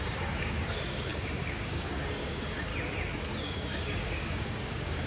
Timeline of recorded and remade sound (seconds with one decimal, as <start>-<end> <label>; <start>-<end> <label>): 0.0-2.7 remade; 2.7-3.4 recorded; 3.4-5.1 remade